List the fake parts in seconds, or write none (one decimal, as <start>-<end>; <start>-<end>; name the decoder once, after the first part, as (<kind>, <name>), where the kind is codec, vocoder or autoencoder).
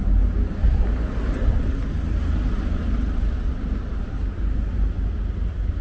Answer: none